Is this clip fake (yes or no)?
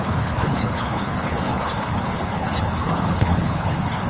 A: yes